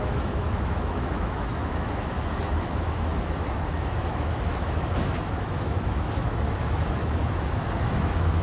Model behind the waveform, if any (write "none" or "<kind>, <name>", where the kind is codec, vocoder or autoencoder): autoencoder, DAC-VAE